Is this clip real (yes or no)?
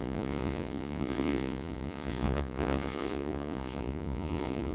no